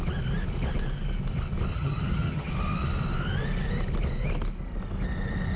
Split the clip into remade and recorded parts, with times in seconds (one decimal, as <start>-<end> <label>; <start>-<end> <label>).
0.0-1.7 recorded; 1.7-2.5 remade; 2.5-5.6 recorded